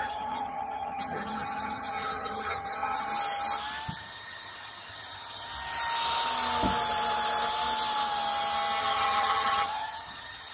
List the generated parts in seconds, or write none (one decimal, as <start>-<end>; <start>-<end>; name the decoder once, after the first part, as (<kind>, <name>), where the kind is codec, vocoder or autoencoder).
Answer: 0.0-3.1 (vocoder, HiFi-GAN); 3.9-5.5; 8.8-10.5